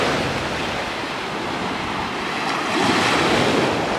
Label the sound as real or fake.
real